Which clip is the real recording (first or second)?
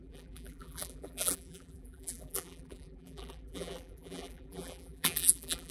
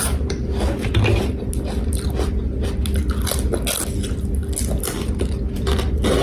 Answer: second